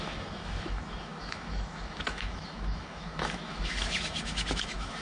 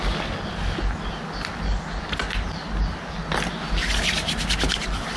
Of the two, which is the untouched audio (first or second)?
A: second